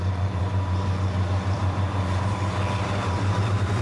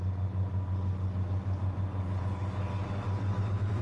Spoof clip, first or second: first